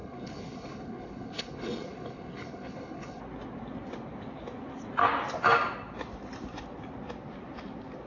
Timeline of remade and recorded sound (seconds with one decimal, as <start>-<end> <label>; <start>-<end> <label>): 0.0-3.2 remade; 3.2-8.1 recorded